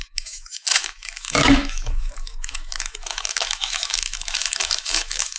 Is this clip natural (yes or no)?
no